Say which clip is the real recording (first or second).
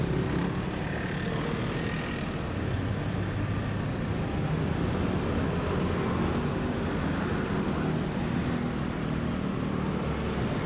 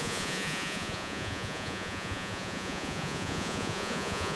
first